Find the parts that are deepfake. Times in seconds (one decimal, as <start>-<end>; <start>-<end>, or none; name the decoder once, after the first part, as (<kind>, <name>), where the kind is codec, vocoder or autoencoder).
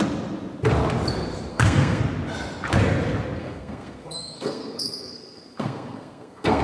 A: 1.5-2.0 (codec, SNAC); 3.4-6.6